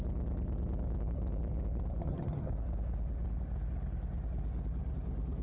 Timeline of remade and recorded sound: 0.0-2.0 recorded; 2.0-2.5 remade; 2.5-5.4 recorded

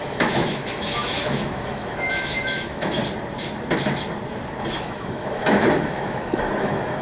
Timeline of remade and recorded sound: 0.0-3.0 remade; 3.0-4.7 recorded; 4.7-7.0 remade

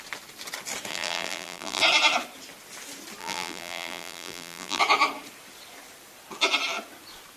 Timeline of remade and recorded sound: 0.0-0.9 recorded; 0.9-1.8 remade; 1.8-3.2 recorded; 3.2-4.8 remade; 4.8-7.4 recorded

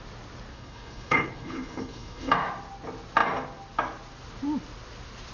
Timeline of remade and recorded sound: 0.0-0.5 recorded; 0.5-2.3 remade; 2.3-5.3 recorded

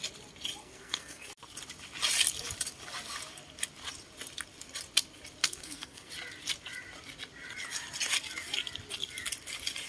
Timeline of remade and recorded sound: 0.0-0.6 recorded; 0.6-1.3 remade; 1.3-5.4 recorded; 5.4-6.1 remade; 6.1-9.9 recorded

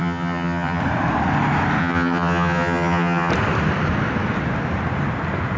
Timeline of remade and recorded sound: 0.0-0.8 remade; 0.8-1.8 recorded; 1.8-3.3 remade; 3.3-5.6 recorded